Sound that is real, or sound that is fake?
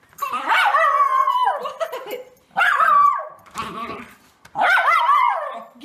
fake